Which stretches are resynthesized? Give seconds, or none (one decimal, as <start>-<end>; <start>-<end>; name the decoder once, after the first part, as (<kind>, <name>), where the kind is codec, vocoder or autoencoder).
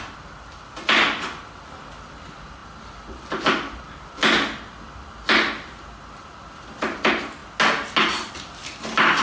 none